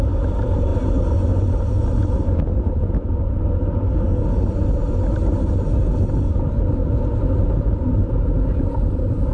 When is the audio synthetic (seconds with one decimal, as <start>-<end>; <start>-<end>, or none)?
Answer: 0.0-0.7; 5.1-9.3